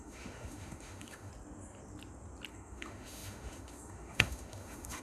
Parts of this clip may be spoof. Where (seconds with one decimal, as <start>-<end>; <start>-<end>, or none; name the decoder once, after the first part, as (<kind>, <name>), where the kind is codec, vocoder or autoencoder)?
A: 0.0-1.3 (autoencoder, DAC-VAE); 2.5-5.0